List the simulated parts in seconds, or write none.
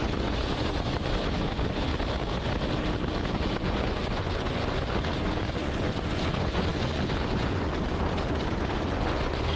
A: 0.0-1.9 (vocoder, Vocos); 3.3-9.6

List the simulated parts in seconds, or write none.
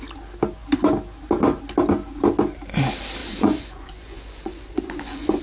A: 3.2-5.4 (vocoder, Vocos)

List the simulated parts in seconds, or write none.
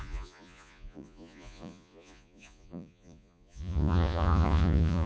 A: 0.0-5.1 (vocoder, Vocos)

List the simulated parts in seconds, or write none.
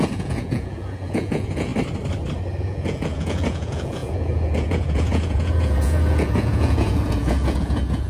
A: 0.0-1.7 (vocoder, Vocos); 2.6-8.1